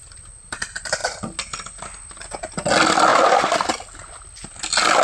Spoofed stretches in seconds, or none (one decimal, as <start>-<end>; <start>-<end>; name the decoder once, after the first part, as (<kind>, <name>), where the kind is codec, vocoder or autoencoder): none